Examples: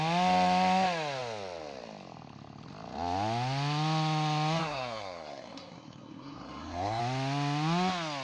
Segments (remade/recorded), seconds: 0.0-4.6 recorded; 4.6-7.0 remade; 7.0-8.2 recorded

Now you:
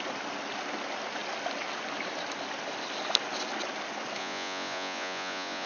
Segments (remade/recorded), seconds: 0.0-4.2 recorded; 4.2-5.7 remade

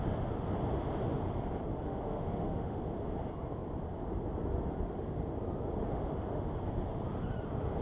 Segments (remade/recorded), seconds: 0.0-1.7 recorded; 1.7-2.8 remade; 2.8-6.0 recorded; 6.0-6.5 remade; 6.5-7.8 recorded

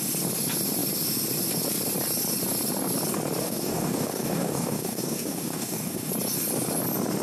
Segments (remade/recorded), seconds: 0.0-3.4 recorded; 3.4-6.1 remade; 6.1-7.2 recorded

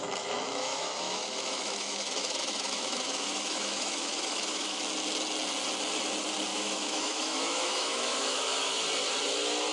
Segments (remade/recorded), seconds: 0.0-4.8 remade; 4.8-6.5 recorded; 6.5-8.8 remade; 8.8-9.7 recorded

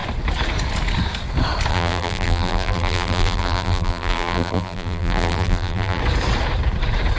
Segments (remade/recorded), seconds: 0.0-1.7 recorded; 1.7-6.0 remade; 6.0-7.2 recorded

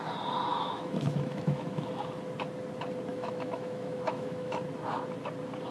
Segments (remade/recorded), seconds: 0.0-0.5 recorded; 0.5-1.9 remade; 1.9-3.1 recorded; 3.1-4.6 remade; 4.6-5.7 recorded